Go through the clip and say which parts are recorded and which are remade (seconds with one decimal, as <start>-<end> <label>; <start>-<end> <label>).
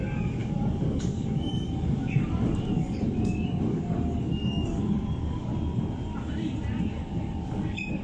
0.0-5.5 remade; 5.5-6.8 recorded; 6.8-8.0 remade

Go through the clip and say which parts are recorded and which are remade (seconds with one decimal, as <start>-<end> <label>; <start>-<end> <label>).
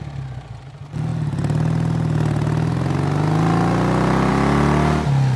0.0-5.4 recorded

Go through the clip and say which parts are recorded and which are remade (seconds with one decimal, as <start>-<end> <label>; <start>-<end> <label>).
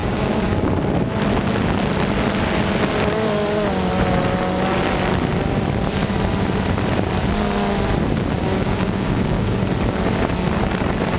0.0-0.7 remade; 0.7-8.4 recorded; 8.4-9.6 remade; 9.6-11.2 recorded